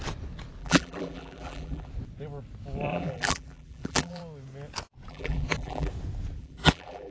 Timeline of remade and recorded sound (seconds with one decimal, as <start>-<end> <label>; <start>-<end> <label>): 0.0-0.6 recorded; 0.6-1.9 remade; 1.9-2.9 recorded; 2.9-4.2 remade; 4.2-5.1 recorded; 5.1-5.9 remade; 5.9-6.4 recorded; 6.4-7.1 remade